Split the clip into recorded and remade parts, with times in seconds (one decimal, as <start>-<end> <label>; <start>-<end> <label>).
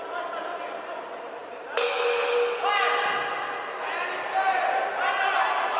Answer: 0.0-5.8 recorded